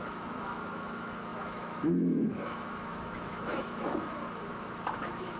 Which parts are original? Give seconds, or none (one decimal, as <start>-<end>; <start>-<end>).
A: none